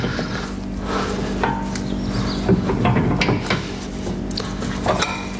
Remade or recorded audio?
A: recorded